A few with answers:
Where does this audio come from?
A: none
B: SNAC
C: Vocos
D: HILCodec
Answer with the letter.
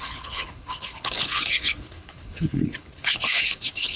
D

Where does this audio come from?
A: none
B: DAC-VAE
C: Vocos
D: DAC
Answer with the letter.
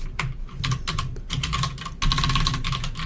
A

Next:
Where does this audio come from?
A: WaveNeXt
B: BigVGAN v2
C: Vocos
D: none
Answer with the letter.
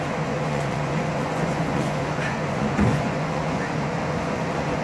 C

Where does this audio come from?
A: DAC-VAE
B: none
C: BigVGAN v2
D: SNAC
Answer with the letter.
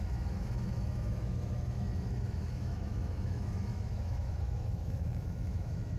A